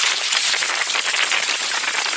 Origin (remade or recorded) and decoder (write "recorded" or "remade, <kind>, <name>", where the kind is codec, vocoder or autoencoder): recorded